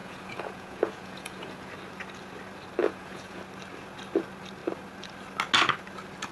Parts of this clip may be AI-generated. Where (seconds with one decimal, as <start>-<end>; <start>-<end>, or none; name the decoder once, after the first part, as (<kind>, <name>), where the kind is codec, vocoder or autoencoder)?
0.0-1.7 (vocoder, Vocos); 2.8-3.4